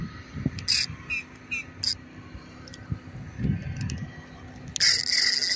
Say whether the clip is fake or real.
real